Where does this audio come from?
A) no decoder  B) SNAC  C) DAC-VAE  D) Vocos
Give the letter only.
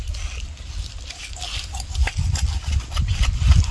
A